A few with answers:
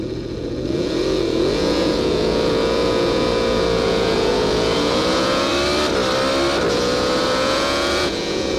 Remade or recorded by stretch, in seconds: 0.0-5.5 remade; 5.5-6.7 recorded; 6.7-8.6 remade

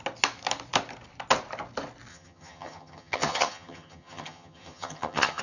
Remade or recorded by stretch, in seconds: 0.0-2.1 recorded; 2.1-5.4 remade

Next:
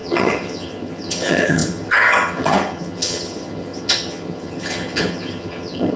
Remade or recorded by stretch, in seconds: 0.0-6.0 remade